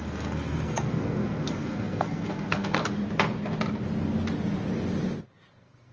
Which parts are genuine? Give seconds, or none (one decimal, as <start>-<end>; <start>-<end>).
2.8-5.5